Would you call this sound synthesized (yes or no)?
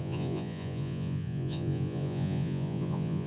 yes